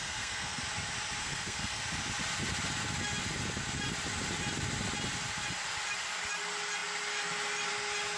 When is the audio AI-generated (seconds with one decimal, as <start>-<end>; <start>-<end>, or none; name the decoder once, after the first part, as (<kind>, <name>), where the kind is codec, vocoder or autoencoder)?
0.0-0.6 (codec, SNAC); 1.2-1.8